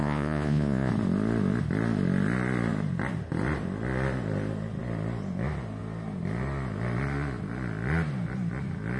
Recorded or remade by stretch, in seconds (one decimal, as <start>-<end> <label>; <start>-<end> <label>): 0.0-0.9 remade; 0.9-9.0 recorded